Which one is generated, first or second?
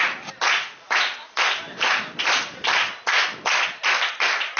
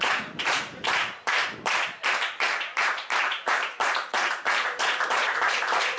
second